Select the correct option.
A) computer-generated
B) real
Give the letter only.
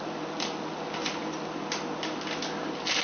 B